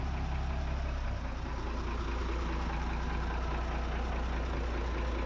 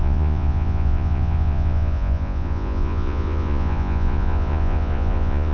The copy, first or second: second